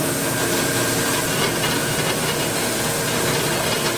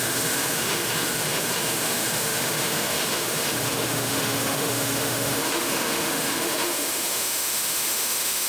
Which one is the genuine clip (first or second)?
first